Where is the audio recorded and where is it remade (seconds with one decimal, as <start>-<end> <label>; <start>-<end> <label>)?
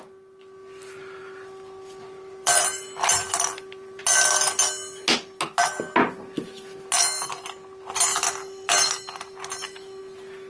0.0-1.2 recorded; 1.2-4.0 remade; 4.0-8.1 recorded; 8.1-10.0 remade; 10.0-10.5 recorded